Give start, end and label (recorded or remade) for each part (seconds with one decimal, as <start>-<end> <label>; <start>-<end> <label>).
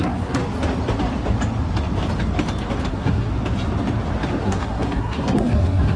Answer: 0.0-0.4 remade; 0.4-2.9 recorded; 2.9-3.3 remade; 3.3-4.4 recorded; 4.4-6.0 remade